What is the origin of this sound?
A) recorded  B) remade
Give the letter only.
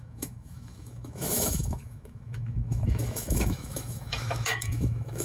B